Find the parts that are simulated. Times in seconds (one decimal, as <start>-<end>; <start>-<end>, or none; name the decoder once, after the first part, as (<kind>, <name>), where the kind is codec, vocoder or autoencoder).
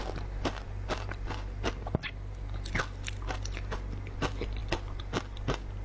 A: none